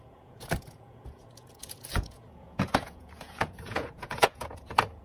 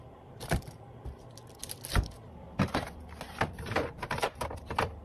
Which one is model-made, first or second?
first